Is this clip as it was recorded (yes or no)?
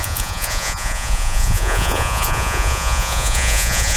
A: no